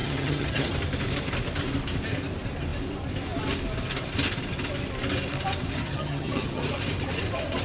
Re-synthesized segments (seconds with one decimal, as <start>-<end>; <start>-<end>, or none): 0.0-0.7; 5.8-6.6